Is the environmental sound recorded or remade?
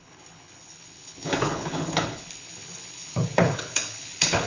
remade